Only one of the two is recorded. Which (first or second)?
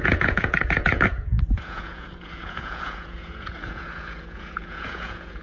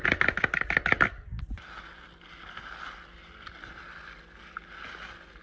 second